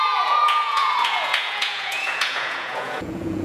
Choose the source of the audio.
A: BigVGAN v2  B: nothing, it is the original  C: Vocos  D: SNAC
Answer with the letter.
C